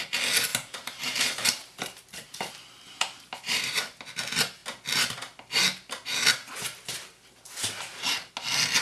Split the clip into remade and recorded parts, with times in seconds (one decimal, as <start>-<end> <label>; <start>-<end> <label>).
0.0-0.5 recorded; 0.5-4.0 remade; 4.0-8.8 recorded